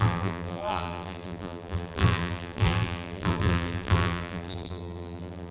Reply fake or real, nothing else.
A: fake